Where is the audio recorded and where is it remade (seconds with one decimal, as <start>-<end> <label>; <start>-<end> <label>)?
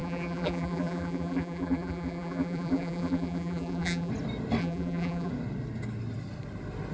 0.0-4.1 remade; 4.1-4.6 recorded; 4.6-5.3 remade; 5.3-6.9 recorded